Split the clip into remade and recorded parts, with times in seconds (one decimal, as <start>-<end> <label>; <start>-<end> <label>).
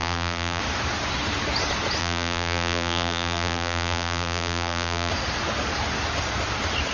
0.0-0.6 remade; 0.6-2.0 recorded; 2.0-5.1 remade; 5.1-6.9 recorded